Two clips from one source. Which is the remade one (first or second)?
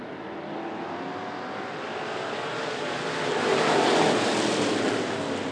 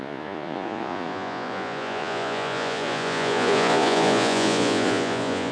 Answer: second